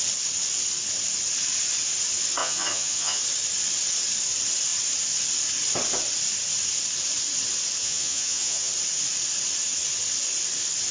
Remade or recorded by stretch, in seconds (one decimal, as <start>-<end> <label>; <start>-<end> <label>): 0.0-2.4 recorded; 2.4-3.2 remade; 3.2-7.8 recorded; 7.8-8.7 remade; 8.7-10.9 recorded